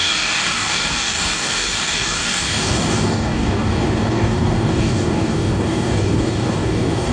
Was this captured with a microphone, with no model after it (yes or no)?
no